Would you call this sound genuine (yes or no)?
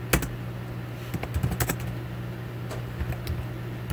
yes